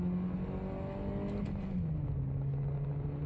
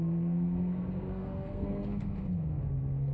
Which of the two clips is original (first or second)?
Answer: first